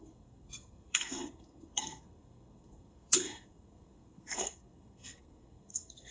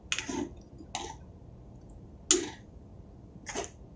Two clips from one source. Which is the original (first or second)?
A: second